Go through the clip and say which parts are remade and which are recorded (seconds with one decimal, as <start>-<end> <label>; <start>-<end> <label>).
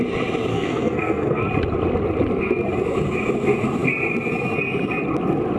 0.0-0.5 recorded; 0.5-1.4 remade; 1.4-5.6 recorded